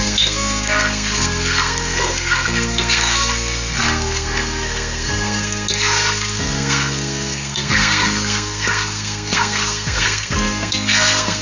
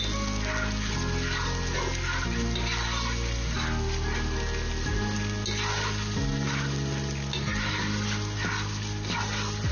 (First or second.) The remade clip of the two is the first